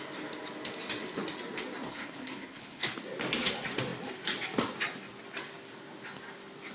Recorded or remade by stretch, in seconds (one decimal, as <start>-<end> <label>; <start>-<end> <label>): 0.0-1.9 recorded; 1.9-2.9 remade; 2.9-6.7 recorded